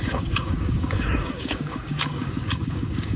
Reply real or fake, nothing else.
fake